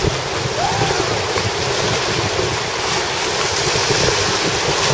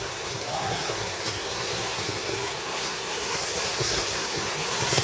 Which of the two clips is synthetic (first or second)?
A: second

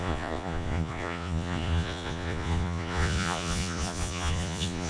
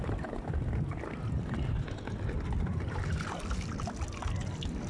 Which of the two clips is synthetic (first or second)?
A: first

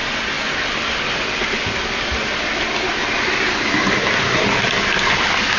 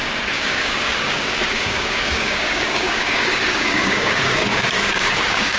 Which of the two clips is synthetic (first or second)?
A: second